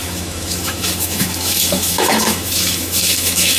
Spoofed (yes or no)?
yes